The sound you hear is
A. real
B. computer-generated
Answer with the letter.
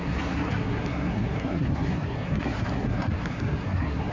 B